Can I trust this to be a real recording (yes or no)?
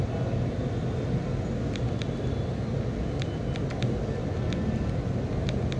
yes